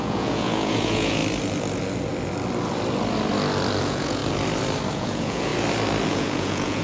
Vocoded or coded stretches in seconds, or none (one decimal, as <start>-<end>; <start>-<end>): 0.0-1.2; 3.8-4.2; 4.9-5.5; 6.1-6.8